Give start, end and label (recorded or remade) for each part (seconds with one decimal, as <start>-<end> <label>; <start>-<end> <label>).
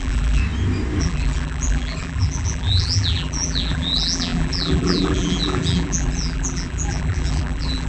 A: 0.0-0.4 remade; 0.4-1.0 recorded; 1.0-7.9 remade